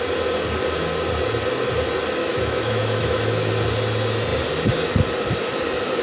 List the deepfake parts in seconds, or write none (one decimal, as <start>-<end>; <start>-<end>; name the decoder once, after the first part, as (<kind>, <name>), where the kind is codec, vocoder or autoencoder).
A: 2.2-3.5 (autoencoder, DAC-VAE)